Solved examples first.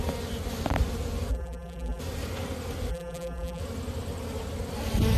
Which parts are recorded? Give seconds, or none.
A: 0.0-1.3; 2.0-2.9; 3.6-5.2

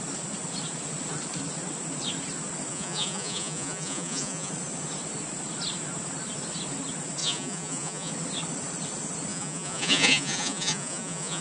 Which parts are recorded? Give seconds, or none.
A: 0.0-2.7; 4.5-7.2; 8.1-9.3

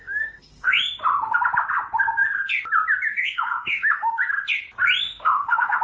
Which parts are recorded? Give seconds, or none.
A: 0.8-3.1; 4.2-5.0

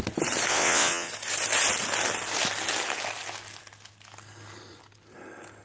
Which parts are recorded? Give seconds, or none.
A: 0.0-0.5; 1.1-5.6

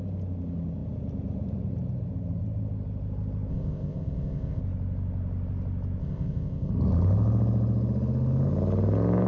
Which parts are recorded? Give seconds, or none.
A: 0.0-3.5; 4.6-6.0; 6.7-9.3

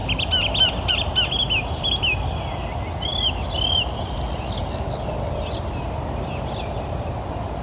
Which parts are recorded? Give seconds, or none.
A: 0.0-7.6

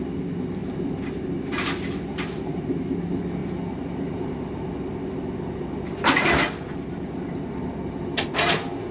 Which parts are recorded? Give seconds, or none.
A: 0.0-8.9